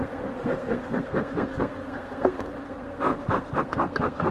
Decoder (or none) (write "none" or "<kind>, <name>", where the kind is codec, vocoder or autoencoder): codec, SNAC